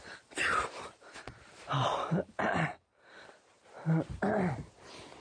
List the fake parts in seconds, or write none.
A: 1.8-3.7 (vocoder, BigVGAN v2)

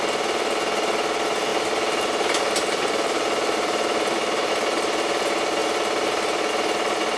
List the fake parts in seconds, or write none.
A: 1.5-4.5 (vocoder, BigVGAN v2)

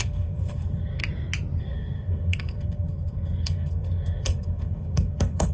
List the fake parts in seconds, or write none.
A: 0.0-1.0 (codec, SNAC); 1.6-5.5